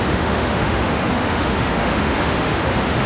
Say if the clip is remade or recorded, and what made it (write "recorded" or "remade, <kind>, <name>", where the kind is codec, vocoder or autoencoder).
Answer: remade, autoencoder, DAC-VAE